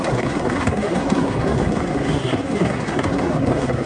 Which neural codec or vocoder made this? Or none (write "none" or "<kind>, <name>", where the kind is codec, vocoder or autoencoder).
codec, SNAC